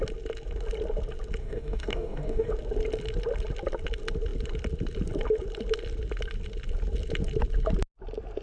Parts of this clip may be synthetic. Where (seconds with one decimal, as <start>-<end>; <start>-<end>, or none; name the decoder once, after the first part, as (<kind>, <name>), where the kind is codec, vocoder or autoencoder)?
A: 1.4-2.5 (codec, DAC)